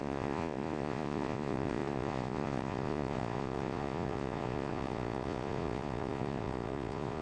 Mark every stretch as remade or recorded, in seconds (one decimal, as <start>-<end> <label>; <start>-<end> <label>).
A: 0.0-7.2 remade